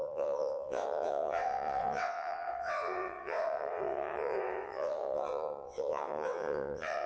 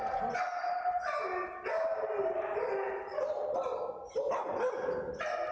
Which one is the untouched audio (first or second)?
second